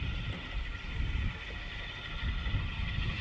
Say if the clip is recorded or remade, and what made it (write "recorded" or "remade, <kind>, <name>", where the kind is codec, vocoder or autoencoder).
recorded